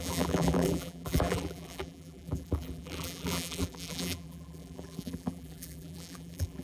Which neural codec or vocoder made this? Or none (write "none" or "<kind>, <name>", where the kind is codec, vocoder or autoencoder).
vocoder, BigVGAN v2